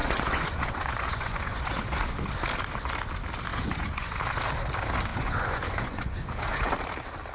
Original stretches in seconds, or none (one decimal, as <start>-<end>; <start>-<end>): 2.3-3.5; 4.2-5.1; 6.7-7.3